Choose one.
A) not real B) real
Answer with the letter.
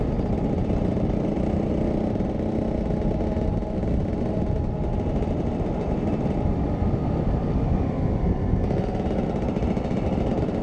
B